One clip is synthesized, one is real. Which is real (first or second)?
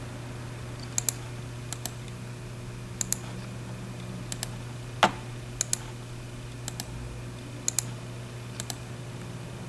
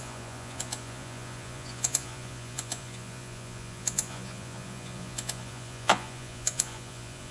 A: first